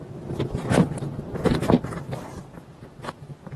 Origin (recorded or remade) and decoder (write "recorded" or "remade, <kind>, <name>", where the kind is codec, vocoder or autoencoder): recorded